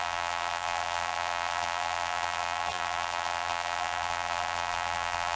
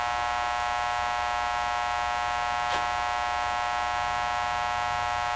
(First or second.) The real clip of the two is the second